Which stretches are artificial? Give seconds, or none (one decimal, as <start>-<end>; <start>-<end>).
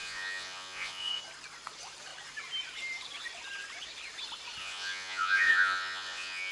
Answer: 0.0-1.2; 4.6-6.5